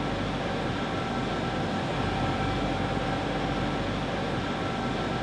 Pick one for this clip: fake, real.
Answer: real